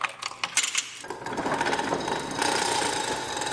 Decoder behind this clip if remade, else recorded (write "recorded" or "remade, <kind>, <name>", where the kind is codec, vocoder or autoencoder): recorded